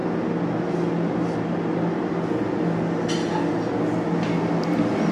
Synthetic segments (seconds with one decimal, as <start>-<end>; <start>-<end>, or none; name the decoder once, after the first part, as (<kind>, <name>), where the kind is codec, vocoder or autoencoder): none